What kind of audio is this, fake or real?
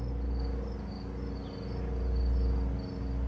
real